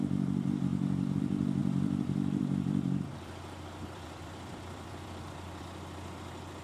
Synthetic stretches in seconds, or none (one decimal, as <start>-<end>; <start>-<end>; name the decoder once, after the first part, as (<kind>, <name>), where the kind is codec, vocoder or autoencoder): 0.7-1.2 (vocoder, BigVGAN v2); 1.6-5.6